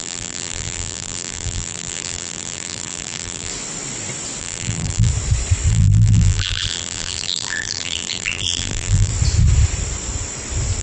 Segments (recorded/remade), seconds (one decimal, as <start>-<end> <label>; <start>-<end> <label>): 0.0-3.5 remade; 3.5-4.4 recorded; 4.4-5.1 remade; 5.1-5.7 recorded; 5.7-9.1 remade; 9.1-10.8 recorded